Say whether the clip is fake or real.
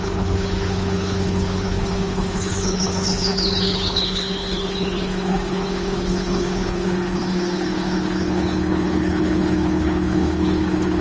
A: fake